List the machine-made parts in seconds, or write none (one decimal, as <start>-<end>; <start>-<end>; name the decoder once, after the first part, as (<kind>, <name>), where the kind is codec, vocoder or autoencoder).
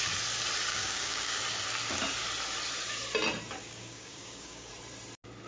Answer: 0.7-1.4 (codec, DAC); 3.6-4.7